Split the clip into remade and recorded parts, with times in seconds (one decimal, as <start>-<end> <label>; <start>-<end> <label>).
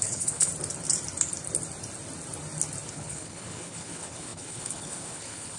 0.0-0.5 remade; 0.5-2.9 recorded; 2.9-5.6 remade